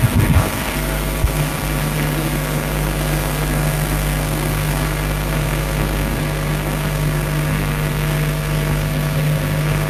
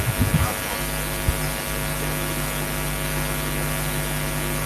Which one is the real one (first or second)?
second